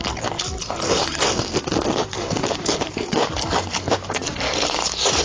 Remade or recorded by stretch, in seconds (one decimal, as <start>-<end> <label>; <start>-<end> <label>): 0.0-2.0 recorded; 2.0-5.2 remade